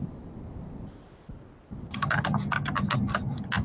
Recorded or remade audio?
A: recorded